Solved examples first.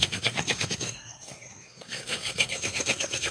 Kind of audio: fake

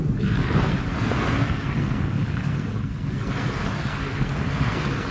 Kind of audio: fake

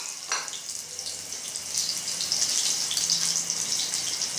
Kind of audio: real